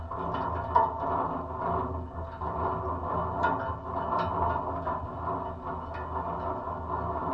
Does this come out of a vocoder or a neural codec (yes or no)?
no